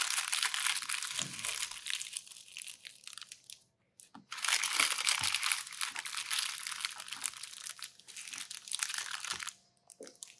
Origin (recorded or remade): recorded